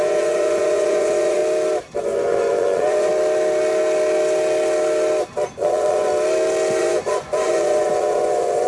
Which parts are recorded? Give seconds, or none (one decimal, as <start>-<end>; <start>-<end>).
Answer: 1.4-2.0; 3.1-5.5; 6.1-6.8